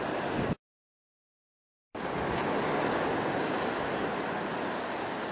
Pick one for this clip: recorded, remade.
recorded